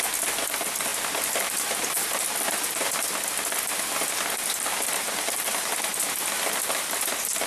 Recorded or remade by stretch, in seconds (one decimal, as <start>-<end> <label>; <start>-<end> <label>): 0.0-7.5 recorded